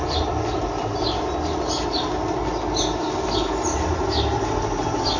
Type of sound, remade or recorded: recorded